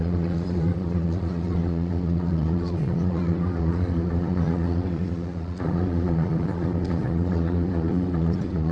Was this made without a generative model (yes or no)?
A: no